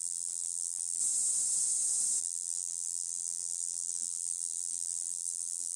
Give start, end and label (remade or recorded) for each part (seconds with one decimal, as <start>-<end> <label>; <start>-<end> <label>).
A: 0.0-1.0 remade; 1.0-2.2 recorded; 2.2-5.8 remade